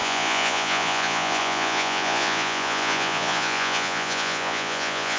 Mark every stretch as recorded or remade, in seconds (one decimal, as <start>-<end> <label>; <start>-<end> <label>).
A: 0.0-5.2 remade